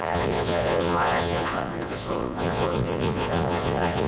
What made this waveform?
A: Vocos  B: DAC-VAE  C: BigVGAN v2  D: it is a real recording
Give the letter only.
A